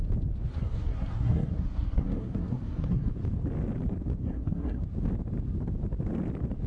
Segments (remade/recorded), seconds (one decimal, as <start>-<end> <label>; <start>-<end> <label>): 0.0-0.5 recorded; 0.5-3.1 remade; 3.1-4.2 recorded; 4.2-4.8 remade; 4.8-6.7 recorded